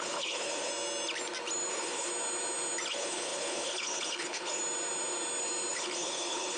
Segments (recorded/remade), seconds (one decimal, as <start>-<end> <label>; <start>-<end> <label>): 0.0-0.7 remade; 0.7-1.7 recorded; 1.7-2.1 remade; 2.1-2.9 recorded; 2.9-4.6 remade; 4.6-5.7 recorded; 5.7-6.6 remade